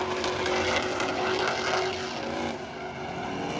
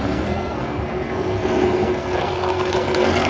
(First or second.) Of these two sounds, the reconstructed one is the second